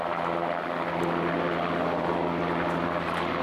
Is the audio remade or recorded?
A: recorded